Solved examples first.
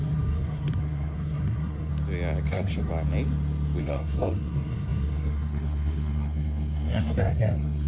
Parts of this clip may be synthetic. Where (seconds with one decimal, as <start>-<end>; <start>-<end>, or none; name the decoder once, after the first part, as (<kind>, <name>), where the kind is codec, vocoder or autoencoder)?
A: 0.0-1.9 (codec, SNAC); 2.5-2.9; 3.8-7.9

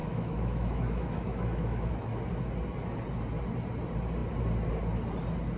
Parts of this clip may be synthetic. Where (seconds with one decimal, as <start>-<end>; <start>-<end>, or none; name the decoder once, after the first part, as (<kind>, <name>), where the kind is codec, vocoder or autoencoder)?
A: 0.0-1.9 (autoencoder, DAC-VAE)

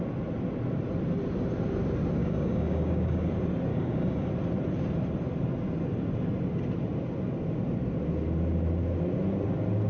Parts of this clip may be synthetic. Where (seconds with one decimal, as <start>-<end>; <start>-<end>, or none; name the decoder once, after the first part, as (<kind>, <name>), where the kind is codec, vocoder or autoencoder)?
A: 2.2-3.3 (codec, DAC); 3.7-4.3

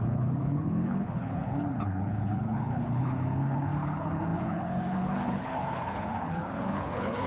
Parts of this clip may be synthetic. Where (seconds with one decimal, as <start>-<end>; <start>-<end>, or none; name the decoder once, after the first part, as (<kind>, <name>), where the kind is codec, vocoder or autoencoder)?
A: 0.0-7.3 (codec, HILCodec)

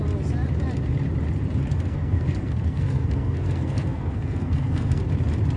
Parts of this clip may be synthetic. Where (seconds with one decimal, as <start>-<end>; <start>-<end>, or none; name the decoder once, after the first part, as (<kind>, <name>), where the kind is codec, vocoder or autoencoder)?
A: 1.7-5.0 (codec, SNAC)

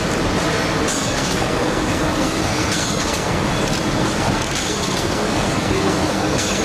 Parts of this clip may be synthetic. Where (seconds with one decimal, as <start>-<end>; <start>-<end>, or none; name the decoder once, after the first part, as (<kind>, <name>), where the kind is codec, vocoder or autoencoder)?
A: 0.9-3.5 (codec, SNAC); 4.0-6.6

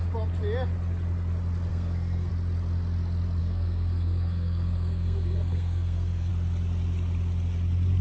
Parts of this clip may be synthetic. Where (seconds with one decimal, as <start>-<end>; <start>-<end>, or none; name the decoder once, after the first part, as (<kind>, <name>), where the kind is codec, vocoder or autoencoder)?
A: 1.7-2.3 (codec, SNAC); 3.4-6.3